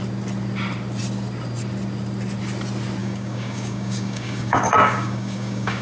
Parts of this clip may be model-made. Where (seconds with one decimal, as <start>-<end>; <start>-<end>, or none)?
3.0-5.8